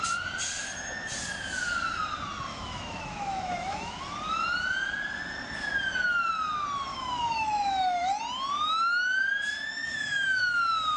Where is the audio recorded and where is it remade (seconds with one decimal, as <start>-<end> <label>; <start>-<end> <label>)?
0.0-2.5 recorded; 2.5-4.0 remade; 4.0-6.9 recorded; 6.9-8.2 remade; 8.2-9.8 recorded; 9.8-10.4 remade; 10.4-11.0 recorded